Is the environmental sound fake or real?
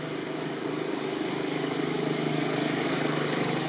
fake